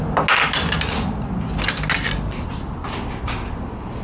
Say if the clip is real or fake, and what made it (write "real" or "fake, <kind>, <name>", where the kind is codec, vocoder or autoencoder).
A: real